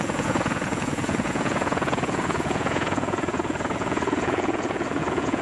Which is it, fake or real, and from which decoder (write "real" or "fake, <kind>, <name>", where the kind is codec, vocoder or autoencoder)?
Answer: fake, vocoder, Vocos